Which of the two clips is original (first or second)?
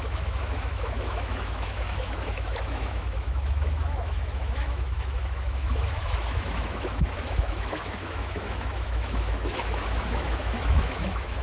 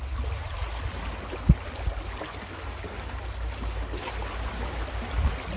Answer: second